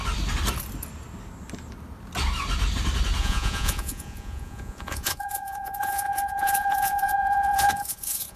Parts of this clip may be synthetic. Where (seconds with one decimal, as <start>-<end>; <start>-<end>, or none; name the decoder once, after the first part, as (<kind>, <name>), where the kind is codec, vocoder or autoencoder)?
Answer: 3.2-8.4 (vocoder, Vocos)